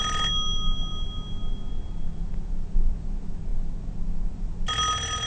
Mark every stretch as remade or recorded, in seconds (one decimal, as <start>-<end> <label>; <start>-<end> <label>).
0.0-5.3 recorded

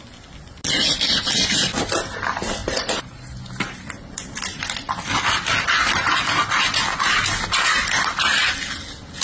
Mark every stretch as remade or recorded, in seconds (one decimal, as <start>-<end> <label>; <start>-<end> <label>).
0.0-9.2 recorded

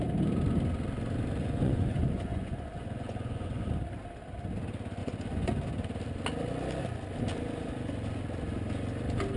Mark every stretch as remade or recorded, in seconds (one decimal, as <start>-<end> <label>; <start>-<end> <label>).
0.0-1.4 recorded; 1.4-3.7 remade; 3.7-5.0 recorded; 5.0-5.5 remade; 5.5-9.4 recorded